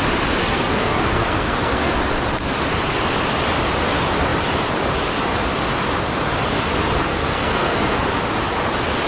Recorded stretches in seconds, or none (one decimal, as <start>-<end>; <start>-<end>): 0.0-0.4; 1.9-7.1; 8.1-9.1